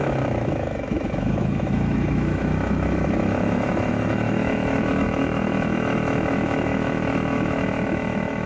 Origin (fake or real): fake